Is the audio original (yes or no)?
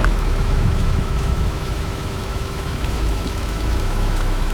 no